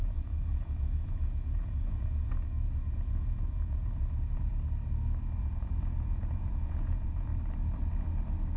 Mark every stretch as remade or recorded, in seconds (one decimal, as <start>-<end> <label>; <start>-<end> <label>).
0.0-4.5 remade; 4.5-5.4 recorded; 5.4-7.3 remade; 7.3-8.6 recorded